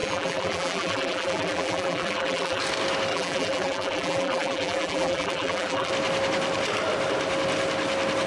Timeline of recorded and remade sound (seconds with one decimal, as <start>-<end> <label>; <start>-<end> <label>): 0.0-2.6 remade; 2.6-3.1 recorded; 3.1-5.9 remade; 5.9-8.3 recorded